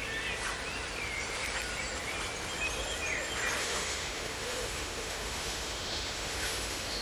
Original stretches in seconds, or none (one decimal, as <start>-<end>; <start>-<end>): 0.0-3.6